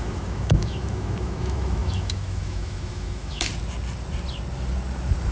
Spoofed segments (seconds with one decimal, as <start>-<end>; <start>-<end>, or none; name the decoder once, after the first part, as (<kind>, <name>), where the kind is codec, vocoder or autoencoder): 0.0-3.5 (autoencoder, DAC-VAE)